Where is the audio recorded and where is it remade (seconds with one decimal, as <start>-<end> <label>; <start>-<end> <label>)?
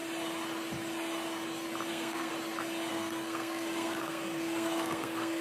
0.0-1.9 recorded; 1.9-2.3 remade; 2.3-2.9 recorded; 2.9-5.4 remade